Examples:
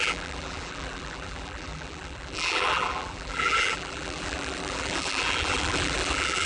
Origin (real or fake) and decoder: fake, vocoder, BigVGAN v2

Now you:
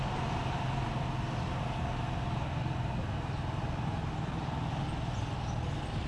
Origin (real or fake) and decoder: real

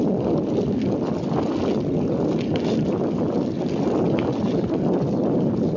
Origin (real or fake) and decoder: real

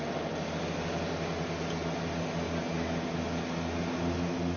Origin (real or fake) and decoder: real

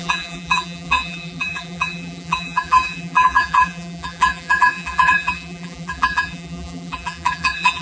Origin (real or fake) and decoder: fake, vocoder, BigVGAN v2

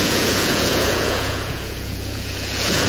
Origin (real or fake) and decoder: fake, vocoder, Vocos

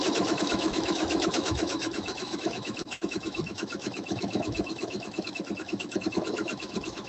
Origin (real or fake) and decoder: fake, autoencoder, DAC-VAE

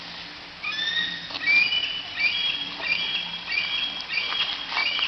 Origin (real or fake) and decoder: real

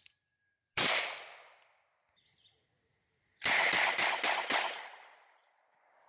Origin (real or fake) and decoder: real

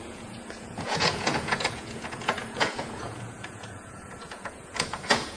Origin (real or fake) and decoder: fake, vocoder, Vocos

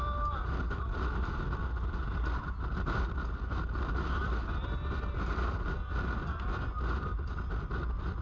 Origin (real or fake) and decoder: real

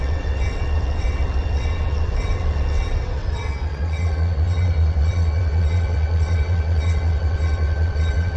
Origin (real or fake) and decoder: fake, vocoder, WaveNeXt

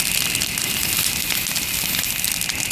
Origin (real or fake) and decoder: real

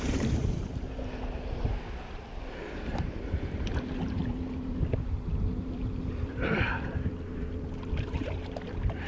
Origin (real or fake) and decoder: fake, vocoder, BigVGAN v2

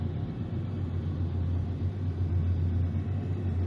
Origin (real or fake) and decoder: real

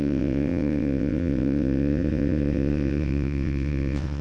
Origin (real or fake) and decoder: fake, vocoder, WaveNeXt